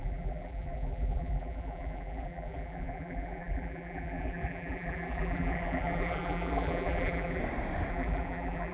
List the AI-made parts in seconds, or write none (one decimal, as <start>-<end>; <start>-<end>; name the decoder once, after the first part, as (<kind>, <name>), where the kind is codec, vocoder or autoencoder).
0.0-7.4 (vocoder, BigVGAN v2); 7.9-8.7